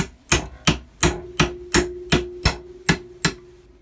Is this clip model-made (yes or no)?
no